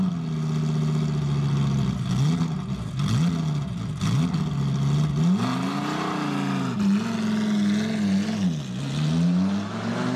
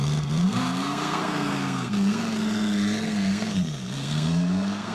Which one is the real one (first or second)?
first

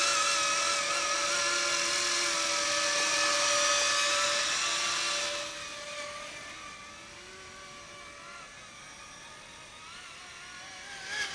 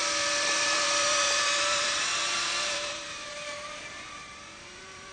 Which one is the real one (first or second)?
first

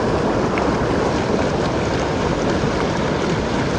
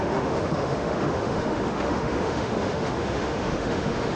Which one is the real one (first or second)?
first